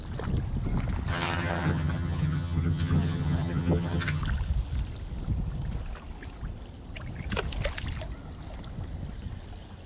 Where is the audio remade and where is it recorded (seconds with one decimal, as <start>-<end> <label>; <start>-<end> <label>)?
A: 0.0-1.1 recorded; 1.1-4.2 remade; 4.2-9.9 recorded